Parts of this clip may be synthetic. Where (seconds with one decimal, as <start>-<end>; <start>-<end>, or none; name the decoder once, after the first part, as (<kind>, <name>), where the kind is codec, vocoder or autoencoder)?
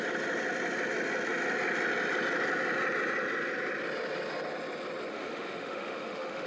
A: 5.1-6.5 (autoencoder, DAC-VAE)